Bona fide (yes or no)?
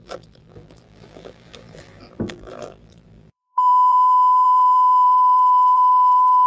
no